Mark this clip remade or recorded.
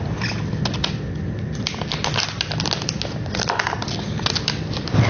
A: recorded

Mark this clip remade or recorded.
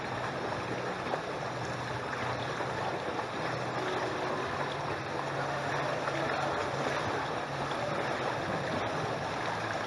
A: recorded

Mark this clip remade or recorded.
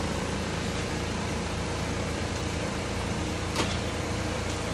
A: remade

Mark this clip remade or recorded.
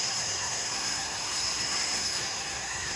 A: remade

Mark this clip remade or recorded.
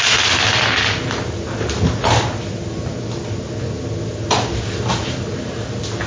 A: recorded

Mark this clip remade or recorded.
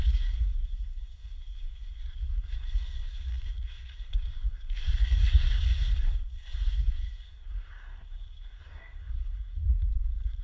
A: remade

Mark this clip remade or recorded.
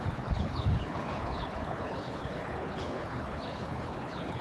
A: remade